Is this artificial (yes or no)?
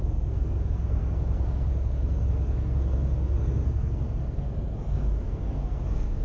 yes